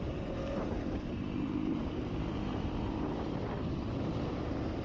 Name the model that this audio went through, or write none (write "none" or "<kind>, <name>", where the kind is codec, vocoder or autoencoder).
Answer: vocoder, BigVGAN v2